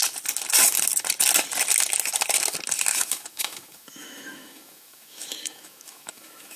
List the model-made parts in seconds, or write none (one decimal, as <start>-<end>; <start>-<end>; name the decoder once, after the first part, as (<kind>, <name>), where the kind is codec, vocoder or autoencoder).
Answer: 2.9-6.6 (autoencoder, DAC-VAE)